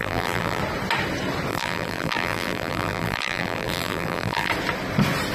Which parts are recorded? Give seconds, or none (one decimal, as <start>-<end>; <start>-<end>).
0.6-1.5; 4.5-5.3